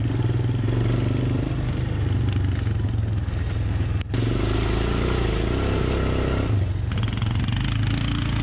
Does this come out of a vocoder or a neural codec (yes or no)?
no